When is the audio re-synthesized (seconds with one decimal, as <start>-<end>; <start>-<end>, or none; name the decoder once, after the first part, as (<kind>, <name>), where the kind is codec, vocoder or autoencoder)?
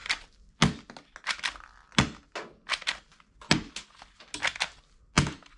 0.0-0.5 (vocoder, BigVGAN v2)